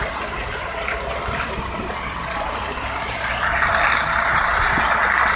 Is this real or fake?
real